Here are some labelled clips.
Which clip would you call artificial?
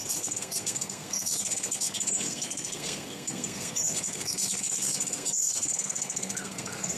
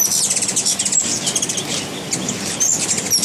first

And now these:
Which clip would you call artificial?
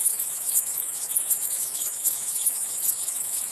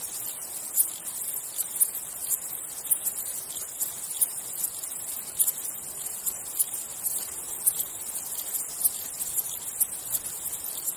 first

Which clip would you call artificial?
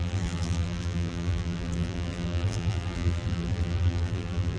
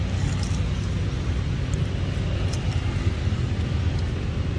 first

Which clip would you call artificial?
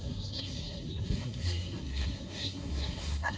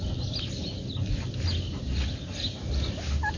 first